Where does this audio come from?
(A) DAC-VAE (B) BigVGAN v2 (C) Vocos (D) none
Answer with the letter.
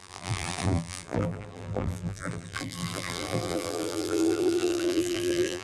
B